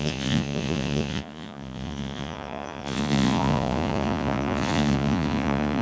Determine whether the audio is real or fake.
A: fake